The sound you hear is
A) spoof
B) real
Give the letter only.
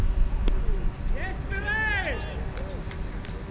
B